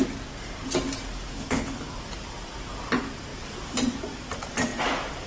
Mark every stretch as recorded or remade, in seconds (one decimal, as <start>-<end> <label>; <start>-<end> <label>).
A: 0.0-1.3 recorded; 1.3-2.0 remade; 2.0-5.3 recorded